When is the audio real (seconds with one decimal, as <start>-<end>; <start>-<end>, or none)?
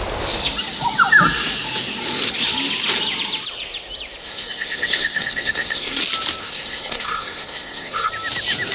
0.0-4.2; 6.0-6.4; 8.1-8.7